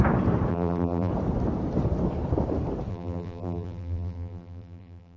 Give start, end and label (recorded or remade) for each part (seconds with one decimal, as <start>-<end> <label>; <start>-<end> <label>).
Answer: 0.0-0.5 recorded; 0.5-1.1 remade; 1.1-2.9 recorded; 2.9-5.2 remade